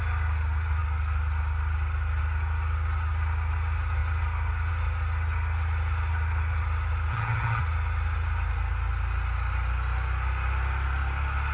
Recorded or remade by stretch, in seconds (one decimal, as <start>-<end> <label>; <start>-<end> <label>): 0.0-7.1 recorded; 7.1-7.6 remade; 7.6-11.5 recorded